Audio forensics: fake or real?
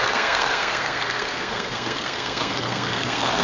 fake